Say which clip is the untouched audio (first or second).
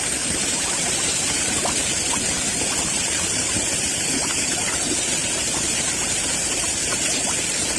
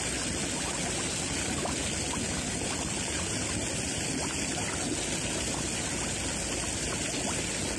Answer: second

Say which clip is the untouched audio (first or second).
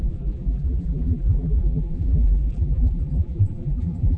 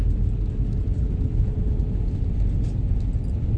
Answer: second